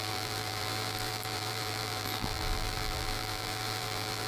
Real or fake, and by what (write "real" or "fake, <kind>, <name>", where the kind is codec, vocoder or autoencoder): fake, vocoder, BigVGAN v2